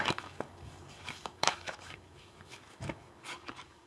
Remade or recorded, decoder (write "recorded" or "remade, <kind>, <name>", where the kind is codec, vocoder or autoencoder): remade, codec, DAC